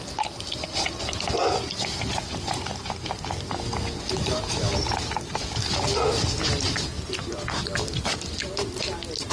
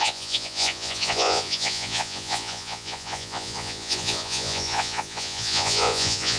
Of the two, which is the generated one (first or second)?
second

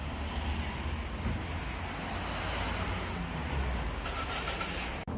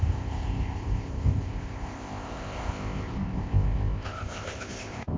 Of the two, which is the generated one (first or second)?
second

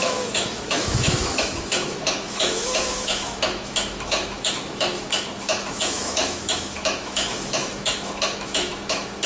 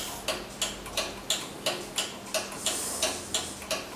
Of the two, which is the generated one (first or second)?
first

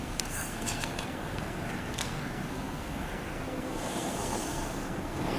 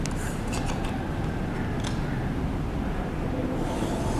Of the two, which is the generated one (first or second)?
first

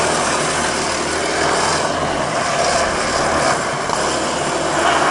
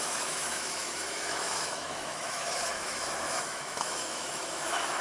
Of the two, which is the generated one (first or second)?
second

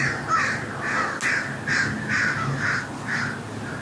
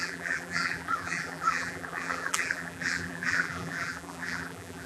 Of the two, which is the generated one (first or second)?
second